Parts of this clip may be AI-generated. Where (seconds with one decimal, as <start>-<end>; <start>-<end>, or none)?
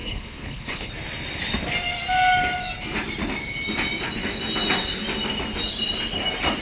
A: 0.0-0.9